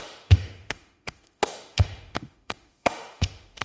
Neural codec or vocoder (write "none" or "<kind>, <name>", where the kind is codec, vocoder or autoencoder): autoencoder, DAC-VAE